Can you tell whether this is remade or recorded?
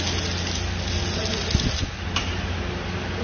recorded